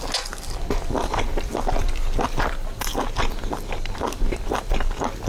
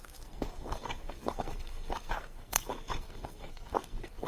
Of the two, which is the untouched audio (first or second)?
first